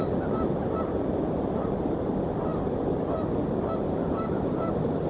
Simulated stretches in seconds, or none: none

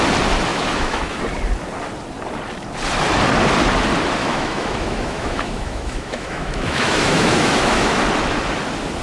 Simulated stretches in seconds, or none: 0.5-1.2 (autoencoder, DAC-VAE); 4.2-8.0